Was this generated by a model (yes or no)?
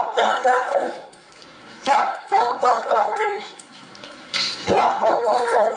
yes